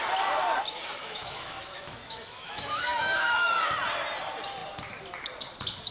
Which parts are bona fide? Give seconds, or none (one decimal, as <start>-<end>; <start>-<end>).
0.0-1.0; 3.5-5.9